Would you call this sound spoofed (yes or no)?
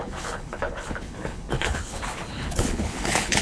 yes